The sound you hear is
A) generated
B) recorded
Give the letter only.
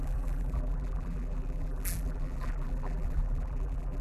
A